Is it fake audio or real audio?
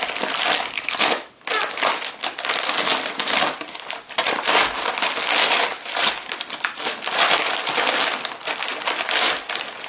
real